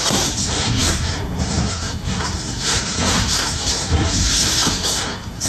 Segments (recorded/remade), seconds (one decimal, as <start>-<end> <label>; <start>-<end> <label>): 0.0-5.5 remade